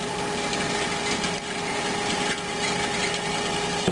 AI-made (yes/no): no